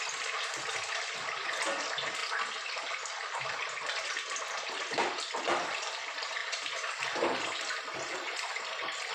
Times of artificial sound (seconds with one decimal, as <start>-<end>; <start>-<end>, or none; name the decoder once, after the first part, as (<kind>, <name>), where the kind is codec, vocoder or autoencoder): none